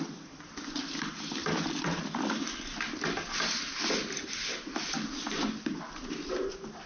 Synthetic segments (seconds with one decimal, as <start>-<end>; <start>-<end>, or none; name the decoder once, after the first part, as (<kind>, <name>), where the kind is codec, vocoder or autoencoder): 1.4-3.6 (vocoder, BigVGAN v2); 5.4-6.5